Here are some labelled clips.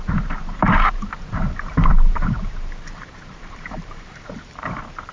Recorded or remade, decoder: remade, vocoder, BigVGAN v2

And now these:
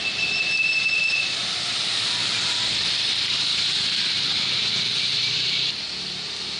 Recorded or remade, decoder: remade, vocoder, BigVGAN v2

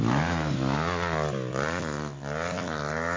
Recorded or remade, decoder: recorded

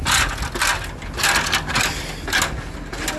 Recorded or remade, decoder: recorded